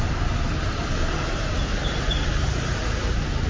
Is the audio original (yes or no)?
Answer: no